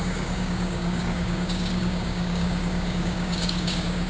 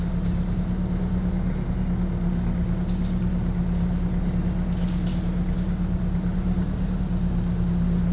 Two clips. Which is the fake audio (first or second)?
first